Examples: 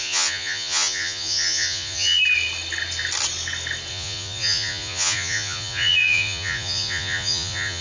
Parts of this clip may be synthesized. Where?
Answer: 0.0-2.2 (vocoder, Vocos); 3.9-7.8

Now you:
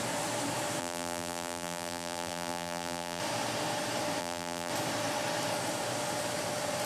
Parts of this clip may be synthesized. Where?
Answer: 0.8-3.2 (vocoder, BigVGAN v2); 4.2-4.7

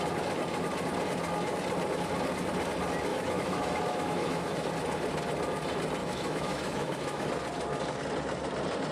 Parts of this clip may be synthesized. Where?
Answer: 3.1-4.7 (autoencoder, DAC-VAE); 6.0-7.3

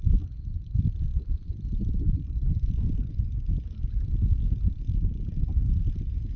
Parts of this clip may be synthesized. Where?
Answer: none